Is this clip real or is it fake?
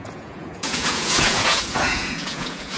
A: fake